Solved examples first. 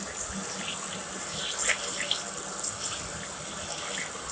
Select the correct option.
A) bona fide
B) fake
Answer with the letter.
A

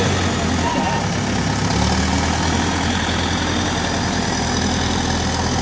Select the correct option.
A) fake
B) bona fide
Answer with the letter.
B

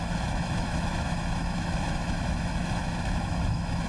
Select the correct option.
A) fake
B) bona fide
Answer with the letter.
A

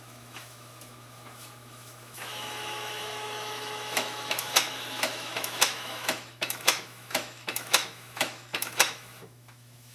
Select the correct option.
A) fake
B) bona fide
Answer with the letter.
A